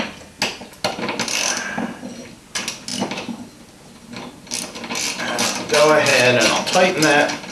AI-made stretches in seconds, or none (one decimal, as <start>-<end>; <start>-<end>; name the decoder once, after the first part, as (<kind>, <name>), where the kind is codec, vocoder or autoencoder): none